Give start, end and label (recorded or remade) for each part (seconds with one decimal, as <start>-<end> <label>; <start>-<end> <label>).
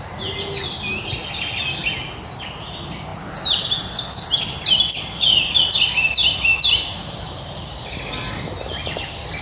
0.0-9.4 recorded